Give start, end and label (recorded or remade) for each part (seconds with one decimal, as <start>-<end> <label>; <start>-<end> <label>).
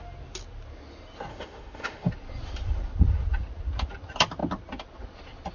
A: 0.0-1.3 recorded; 1.3-2.1 remade; 2.1-5.5 recorded